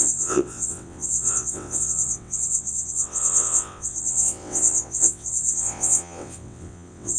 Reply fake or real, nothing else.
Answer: fake